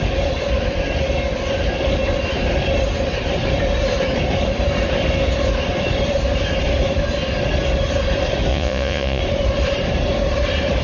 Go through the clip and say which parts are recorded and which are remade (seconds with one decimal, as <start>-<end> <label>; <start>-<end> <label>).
0.0-8.5 recorded; 8.5-9.2 remade; 9.2-10.8 recorded